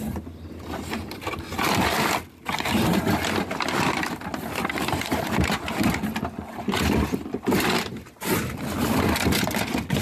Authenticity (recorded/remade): recorded